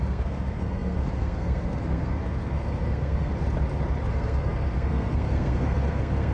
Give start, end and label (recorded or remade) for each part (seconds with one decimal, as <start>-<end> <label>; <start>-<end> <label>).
0.0-3.3 remade; 3.3-4.1 recorded; 4.1-6.3 remade